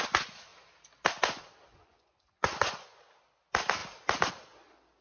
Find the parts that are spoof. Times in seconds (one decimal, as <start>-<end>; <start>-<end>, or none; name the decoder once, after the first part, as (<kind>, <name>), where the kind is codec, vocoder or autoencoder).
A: 1.7-3.0 (vocoder, Vocos)